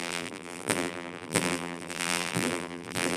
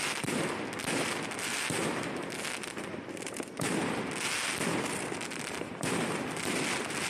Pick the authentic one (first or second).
second